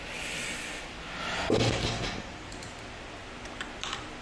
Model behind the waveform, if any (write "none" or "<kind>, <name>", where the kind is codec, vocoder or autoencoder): none